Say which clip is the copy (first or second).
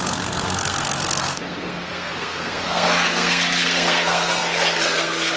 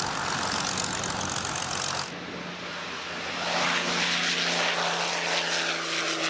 first